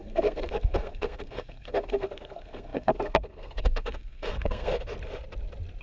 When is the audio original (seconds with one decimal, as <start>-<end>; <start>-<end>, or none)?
4.7-5.8